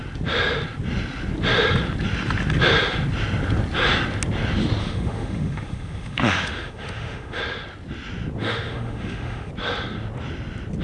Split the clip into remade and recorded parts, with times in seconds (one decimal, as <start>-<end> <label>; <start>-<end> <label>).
0.0-4.8 recorded; 4.8-7.4 remade; 7.4-8.4 recorded; 8.4-9.5 remade; 9.5-10.8 recorded